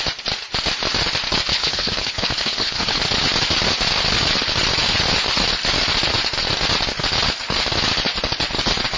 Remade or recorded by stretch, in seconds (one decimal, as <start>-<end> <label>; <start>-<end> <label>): 0.0-1.5 recorded; 1.5-3.0 remade; 3.0-9.0 recorded